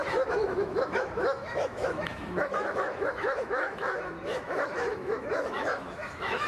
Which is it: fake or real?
fake